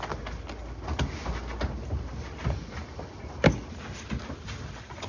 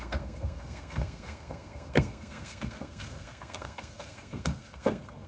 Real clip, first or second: first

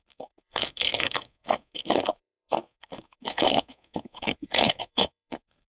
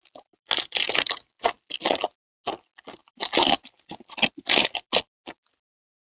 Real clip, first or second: second